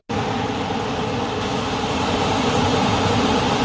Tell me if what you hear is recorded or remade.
recorded